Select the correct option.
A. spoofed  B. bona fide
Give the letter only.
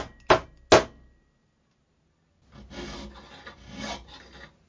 B